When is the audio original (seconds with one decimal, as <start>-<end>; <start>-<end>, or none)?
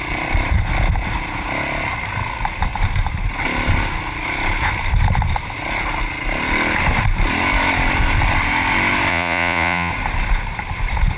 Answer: 0.0-9.1; 9.9-11.2